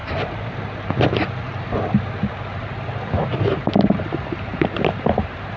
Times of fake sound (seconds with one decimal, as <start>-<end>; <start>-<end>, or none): 0.0-3.4; 4.5-5.6